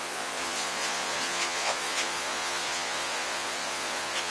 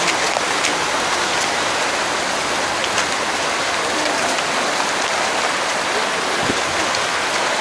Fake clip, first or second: first